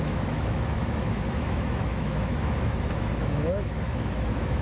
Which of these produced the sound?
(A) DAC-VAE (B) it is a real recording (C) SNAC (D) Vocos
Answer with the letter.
A